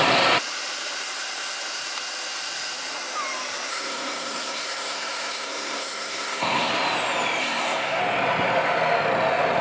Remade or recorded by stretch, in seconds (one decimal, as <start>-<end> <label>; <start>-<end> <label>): 0.0-3.7 recorded; 3.7-6.7 remade; 6.7-7.4 recorded; 7.4-8.0 remade; 8.0-9.6 recorded